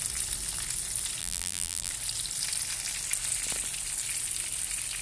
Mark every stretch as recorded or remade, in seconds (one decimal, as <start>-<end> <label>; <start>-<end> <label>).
0.0-1.2 recorded; 1.2-1.9 remade; 1.9-5.0 recorded